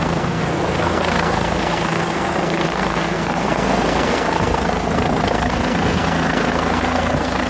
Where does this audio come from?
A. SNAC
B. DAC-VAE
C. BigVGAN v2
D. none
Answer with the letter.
A